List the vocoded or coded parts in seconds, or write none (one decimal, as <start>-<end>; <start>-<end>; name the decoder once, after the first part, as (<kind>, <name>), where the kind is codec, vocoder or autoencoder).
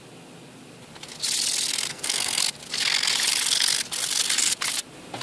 1.9-2.4 (codec, SNAC)